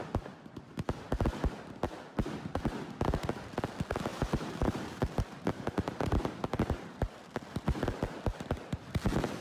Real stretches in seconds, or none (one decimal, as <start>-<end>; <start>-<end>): 0.0-4.1; 8.1-9.4